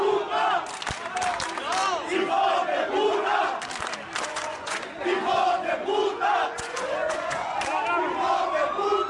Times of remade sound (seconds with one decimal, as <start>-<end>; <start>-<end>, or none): 2.7-3.4; 4.3-7.6